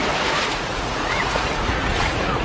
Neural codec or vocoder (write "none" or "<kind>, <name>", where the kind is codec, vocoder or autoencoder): vocoder, Vocos